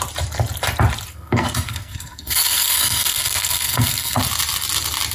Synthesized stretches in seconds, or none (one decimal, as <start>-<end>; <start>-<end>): 1.1-4.2